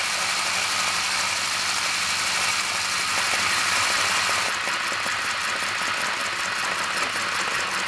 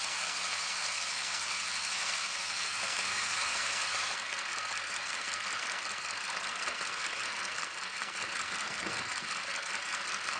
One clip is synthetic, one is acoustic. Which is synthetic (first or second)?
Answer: second